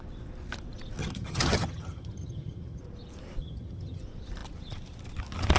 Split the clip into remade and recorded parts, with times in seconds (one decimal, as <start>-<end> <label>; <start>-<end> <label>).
0.0-1.0 recorded; 1.0-2.8 remade; 2.8-3.4 recorded; 3.4-4.0 remade; 4.0-5.6 recorded